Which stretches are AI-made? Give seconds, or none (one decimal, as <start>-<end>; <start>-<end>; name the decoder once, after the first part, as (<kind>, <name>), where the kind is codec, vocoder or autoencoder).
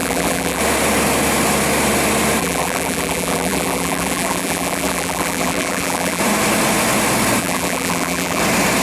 0.0-0.6 (vocoder, BigVGAN v2); 2.4-6.2; 7.4-8.4